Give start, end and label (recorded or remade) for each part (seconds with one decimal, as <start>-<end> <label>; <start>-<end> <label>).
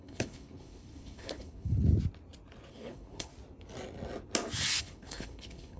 0.0-1.9 remade; 1.9-2.7 recorded; 2.7-3.3 remade; 3.3-4.8 recorded; 4.8-5.8 remade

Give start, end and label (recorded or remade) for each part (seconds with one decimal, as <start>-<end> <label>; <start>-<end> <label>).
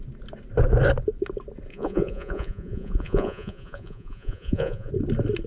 0.0-1.7 recorded; 1.7-4.9 remade; 4.9-5.5 recorded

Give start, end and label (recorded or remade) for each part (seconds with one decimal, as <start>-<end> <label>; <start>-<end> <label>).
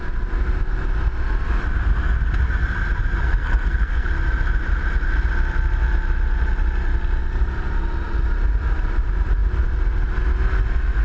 0.0-3.2 recorded; 3.2-4.1 remade; 4.1-11.0 recorded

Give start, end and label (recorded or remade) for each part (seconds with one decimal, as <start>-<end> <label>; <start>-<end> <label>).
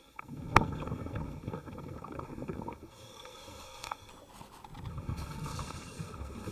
0.0-4.1 remade; 4.1-4.9 recorded; 4.9-6.5 remade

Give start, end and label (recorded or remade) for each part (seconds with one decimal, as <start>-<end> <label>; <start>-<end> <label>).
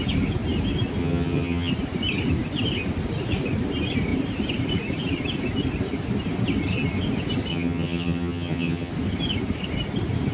0.0-1.0 recorded; 1.0-1.7 remade; 1.7-7.5 recorded; 7.5-8.9 remade; 8.9-10.3 recorded